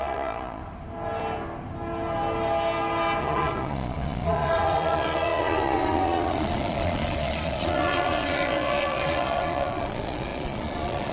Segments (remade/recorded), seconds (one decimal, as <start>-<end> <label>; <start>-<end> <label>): 0.0-0.6 remade; 0.6-3.2 recorded; 3.2-11.1 remade